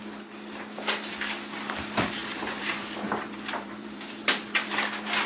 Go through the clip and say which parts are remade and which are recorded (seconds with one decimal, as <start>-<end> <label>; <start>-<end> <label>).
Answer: 0.0-2.2 recorded; 2.2-4.7 remade; 4.7-5.3 recorded